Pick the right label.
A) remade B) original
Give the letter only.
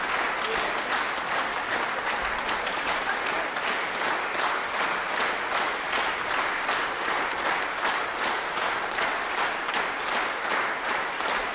B